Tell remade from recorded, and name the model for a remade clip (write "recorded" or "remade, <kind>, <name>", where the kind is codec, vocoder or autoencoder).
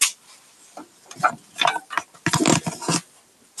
recorded